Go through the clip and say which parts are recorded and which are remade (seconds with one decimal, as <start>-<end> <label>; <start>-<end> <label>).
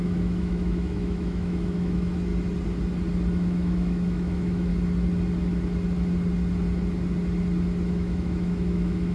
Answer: 0.0-2.3 remade; 2.3-3.3 recorded; 3.3-4.7 remade; 4.7-7.9 recorded; 7.9-9.1 remade